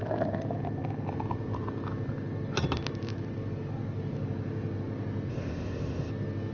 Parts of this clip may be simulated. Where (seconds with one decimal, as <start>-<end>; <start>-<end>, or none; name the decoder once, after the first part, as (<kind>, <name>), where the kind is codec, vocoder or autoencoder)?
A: 5.3-6.1 (codec, ZipCodec)